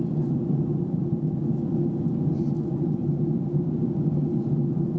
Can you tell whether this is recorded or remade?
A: recorded